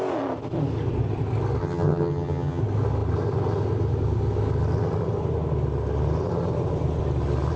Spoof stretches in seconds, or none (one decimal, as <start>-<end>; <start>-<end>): 1.6-2.6